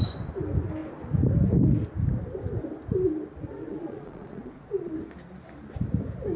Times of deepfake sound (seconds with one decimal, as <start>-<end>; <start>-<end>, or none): 3.6-4.9